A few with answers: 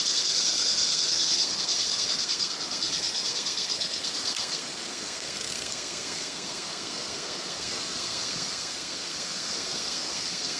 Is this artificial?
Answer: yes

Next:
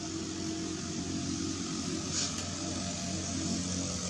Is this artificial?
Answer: no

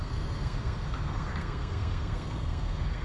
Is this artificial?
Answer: yes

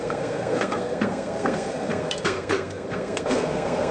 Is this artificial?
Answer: yes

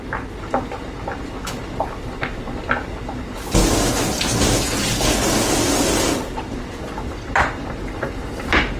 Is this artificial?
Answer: no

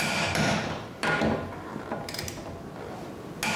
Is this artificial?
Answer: no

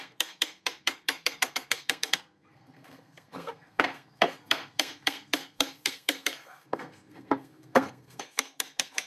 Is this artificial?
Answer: yes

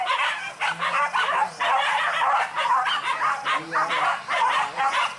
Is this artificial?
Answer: no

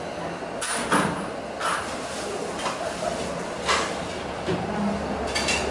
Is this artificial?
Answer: no